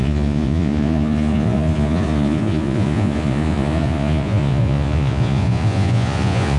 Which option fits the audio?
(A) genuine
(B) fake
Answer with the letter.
B